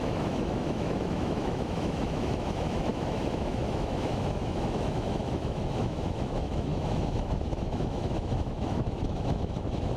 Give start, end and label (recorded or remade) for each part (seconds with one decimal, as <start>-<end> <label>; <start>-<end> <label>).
0.0-10.0 remade